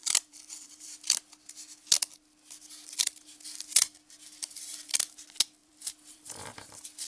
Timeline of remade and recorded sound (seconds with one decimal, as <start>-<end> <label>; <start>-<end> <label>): 0.0-1.0 remade; 1.0-5.6 recorded; 5.6-7.1 remade